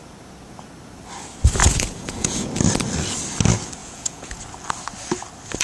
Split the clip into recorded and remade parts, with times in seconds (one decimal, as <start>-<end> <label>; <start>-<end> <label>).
0.0-1.6 recorded; 1.6-2.5 remade; 2.5-3.8 recorded; 3.8-4.4 remade; 4.4-5.6 recorded